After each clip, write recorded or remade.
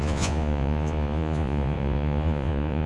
remade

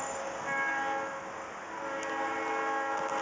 recorded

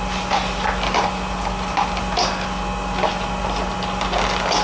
recorded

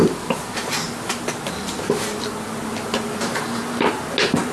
recorded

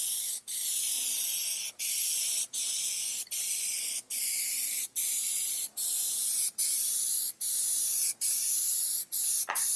recorded